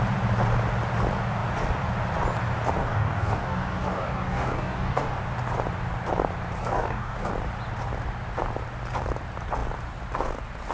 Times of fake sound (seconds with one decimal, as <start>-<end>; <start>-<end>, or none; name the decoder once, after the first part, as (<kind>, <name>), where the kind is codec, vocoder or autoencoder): 2.8-5.2 (codec, DAC); 6.6-7.3